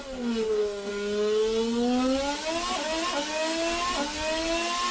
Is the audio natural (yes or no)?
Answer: yes